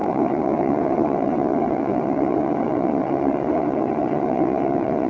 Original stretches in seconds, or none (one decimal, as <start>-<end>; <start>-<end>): none